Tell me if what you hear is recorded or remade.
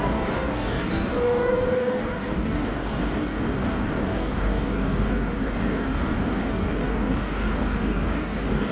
remade